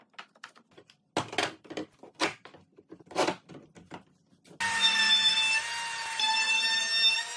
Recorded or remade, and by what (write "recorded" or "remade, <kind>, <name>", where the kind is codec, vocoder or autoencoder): recorded